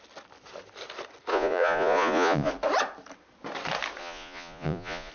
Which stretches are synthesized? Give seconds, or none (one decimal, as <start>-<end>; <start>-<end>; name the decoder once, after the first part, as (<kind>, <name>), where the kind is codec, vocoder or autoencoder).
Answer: 1.3-2.5 (vocoder, Vocos); 4.0-5.1